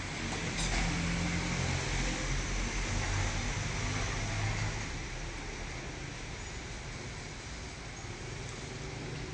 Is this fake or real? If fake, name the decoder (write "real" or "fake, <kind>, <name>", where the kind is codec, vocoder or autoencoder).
real